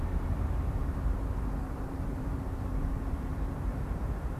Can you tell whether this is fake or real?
fake